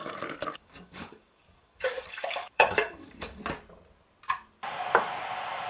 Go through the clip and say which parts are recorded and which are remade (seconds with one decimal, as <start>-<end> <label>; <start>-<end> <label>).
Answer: 0.0-3.4 remade; 3.4-5.7 recorded